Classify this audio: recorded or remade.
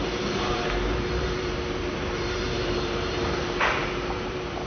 remade